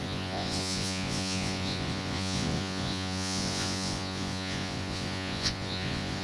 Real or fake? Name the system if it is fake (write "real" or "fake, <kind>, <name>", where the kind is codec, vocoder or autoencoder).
fake, vocoder, Vocos